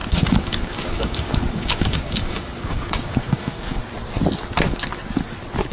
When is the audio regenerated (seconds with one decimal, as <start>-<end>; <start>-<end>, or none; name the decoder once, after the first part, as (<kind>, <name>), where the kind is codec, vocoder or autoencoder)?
0.0-3.8 (codec, DAC)